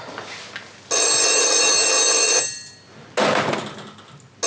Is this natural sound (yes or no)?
yes